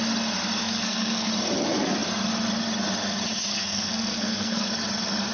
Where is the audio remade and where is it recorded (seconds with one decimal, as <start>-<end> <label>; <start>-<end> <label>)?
0.0-0.6 recorded; 0.6-1.3 remade; 1.3-3.5 recorded; 3.5-4.7 remade; 4.7-5.3 recorded